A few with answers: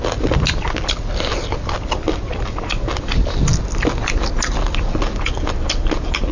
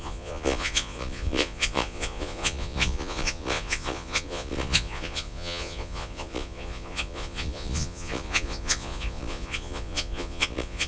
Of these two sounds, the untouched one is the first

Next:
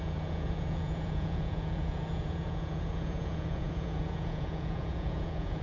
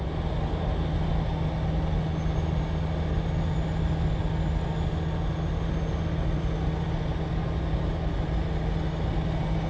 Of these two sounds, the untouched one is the second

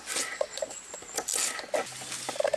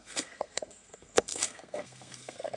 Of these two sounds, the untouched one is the first